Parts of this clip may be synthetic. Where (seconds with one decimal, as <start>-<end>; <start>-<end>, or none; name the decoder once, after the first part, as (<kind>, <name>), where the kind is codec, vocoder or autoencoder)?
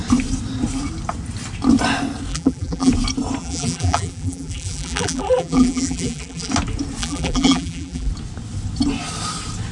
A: 2.3-2.9 (vocoder, BigVGAN v2); 3.4-6.5; 7.0-8.1